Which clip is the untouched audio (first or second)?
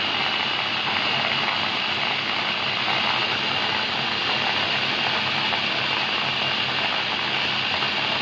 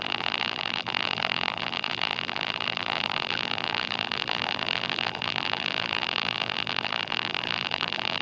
first